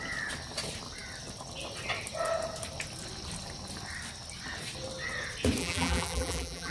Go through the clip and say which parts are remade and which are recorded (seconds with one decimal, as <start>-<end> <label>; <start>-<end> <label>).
0.0-5.6 recorded; 5.6-6.7 remade